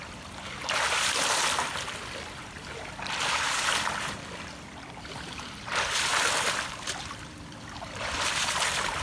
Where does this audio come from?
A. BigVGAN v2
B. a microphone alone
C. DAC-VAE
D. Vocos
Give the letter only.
A